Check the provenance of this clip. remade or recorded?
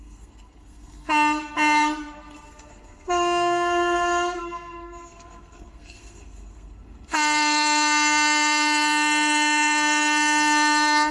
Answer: remade